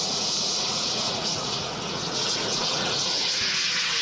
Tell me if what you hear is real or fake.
fake